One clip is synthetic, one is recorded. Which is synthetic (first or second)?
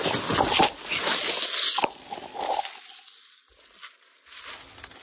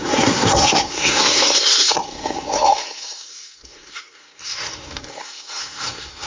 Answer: second